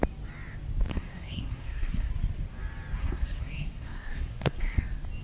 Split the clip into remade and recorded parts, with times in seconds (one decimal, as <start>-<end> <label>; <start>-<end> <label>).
0.0-0.9 recorded; 0.9-2.1 remade; 2.1-3.0 recorded; 3.0-4.8 remade; 4.8-5.2 recorded